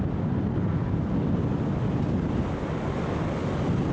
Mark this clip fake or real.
real